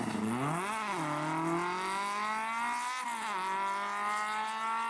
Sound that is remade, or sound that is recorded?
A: recorded